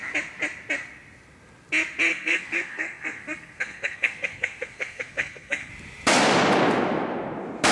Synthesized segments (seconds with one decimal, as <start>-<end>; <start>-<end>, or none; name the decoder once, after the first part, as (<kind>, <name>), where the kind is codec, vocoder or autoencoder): 2.1-5.7 (codec, SNAC)